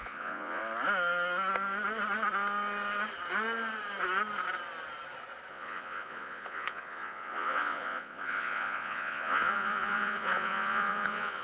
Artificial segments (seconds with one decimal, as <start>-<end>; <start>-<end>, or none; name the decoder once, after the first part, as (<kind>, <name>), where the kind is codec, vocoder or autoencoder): 0.0-0.6 (vocoder, Vocos); 5.5-11.4